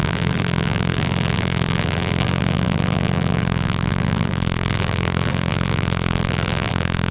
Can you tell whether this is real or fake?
fake